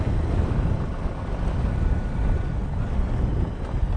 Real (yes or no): yes